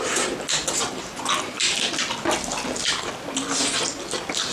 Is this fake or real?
real